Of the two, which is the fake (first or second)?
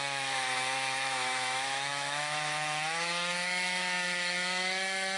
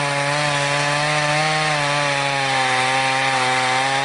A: first